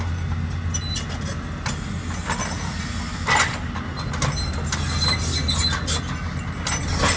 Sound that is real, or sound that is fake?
real